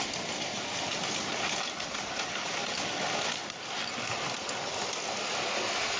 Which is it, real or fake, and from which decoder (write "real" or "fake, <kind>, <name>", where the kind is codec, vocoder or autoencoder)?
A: real